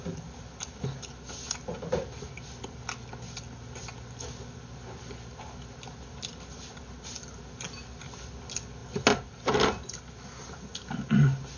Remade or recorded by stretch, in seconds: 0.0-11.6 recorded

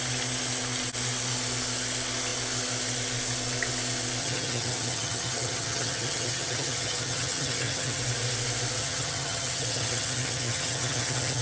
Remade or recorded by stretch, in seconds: 0.0-4.2 recorded; 4.2-8.0 remade; 8.0-8.8 recorded; 8.8-11.4 remade

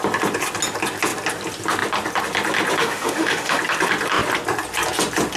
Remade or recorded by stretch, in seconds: 0.0-2.8 recorded; 2.8-3.6 remade; 3.6-5.4 recorded

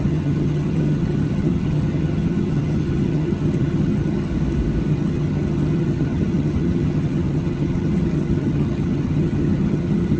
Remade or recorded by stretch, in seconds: 0.0-4.3 remade; 4.3-4.9 recorded; 4.9-10.2 remade

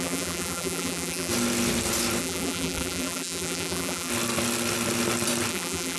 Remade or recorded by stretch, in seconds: 0.0-1.3 remade; 1.3-2.2 recorded; 2.2-4.1 remade; 4.1-5.5 recorded; 5.5-6.0 remade

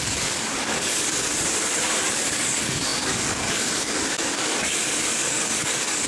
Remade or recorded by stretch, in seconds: 0.0-1.3 remade; 1.3-2.1 recorded; 2.1-6.1 remade

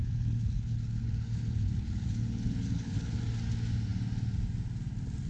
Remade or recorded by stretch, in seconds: 0.0-3.2 remade; 3.2-5.3 recorded

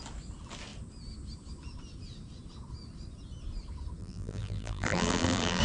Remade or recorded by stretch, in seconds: 0.0-4.0 recorded; 4.0-5.6 remade